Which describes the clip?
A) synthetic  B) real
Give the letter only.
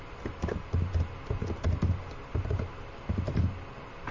B